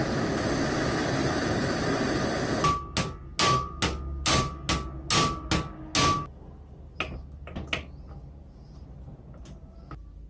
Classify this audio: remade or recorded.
recorded